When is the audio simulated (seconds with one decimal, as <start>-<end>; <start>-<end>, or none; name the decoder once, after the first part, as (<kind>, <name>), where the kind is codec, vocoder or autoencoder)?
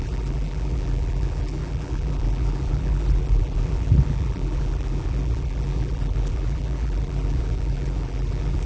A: 0.0-8.7 (vocoder, BigVGAN v2)